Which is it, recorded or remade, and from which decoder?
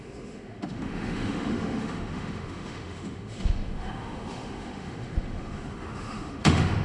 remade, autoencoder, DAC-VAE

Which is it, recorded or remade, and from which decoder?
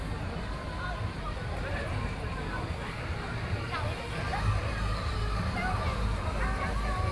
recorded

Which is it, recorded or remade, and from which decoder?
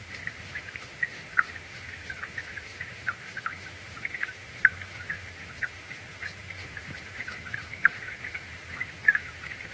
remade, autoencoder, DAC-VAE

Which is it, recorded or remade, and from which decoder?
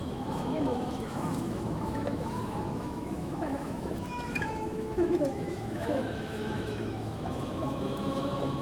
remade, autoencoder, DAC-VAE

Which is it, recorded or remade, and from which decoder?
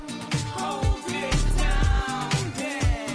recorded